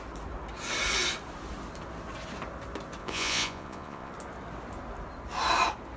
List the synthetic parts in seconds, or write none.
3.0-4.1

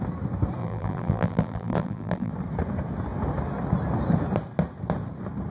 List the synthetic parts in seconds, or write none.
0.6-2.3

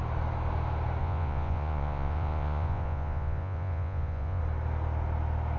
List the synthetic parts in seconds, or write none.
1.0-4.4

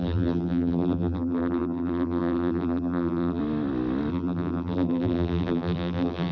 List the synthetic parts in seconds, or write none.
0.0-3.4; 4.1-6.3